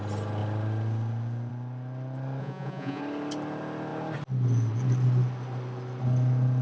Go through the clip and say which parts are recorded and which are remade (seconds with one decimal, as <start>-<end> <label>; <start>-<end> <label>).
0.0-2.4 recorded; 2.4-3.0 remade; 3.0-6.6 recorded